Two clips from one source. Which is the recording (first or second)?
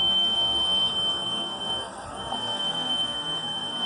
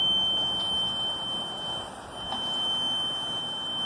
second